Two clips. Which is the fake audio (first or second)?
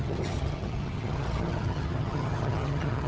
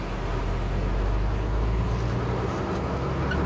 first